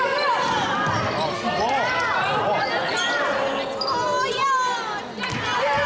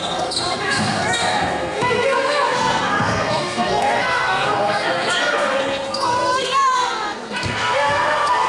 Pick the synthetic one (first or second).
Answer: second